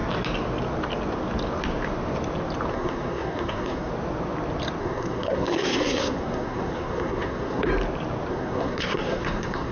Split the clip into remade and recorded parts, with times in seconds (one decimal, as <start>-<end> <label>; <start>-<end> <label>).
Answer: 0.0-2.7 recorded; 2.7-3.9 remade; 3.9-4.8 recorded; 4.8-7.7 remade; 7.7-8.3 recorded; 8.3-9.7 remade

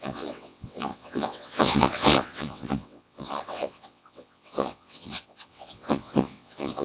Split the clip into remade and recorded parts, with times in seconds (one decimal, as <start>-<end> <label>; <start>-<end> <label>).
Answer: 0.0-6.8 remade